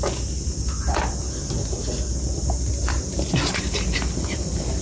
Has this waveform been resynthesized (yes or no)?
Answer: no